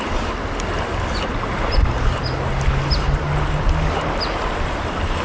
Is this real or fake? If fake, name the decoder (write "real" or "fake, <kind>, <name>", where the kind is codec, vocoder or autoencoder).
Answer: real